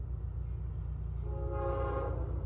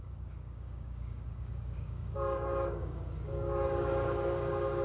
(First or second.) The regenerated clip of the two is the second